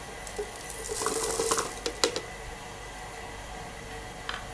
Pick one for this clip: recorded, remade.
recorded